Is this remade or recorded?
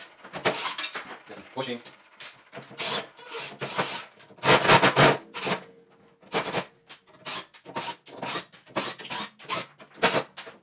recorded